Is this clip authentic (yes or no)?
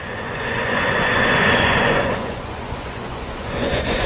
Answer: no